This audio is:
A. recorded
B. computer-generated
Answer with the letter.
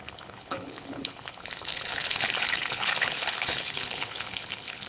B